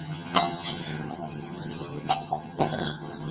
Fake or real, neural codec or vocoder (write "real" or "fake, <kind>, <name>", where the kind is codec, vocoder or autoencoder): fake, vocoder, HiFi-GAN